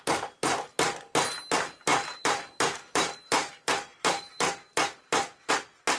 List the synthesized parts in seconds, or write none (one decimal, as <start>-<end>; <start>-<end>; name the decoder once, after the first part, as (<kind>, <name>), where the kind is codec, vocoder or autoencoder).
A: 1.9-5.5 (vocoder, BigVGAN v2)